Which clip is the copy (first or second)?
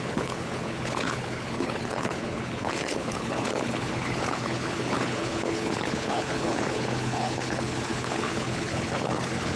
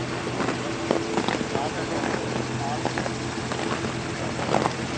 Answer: first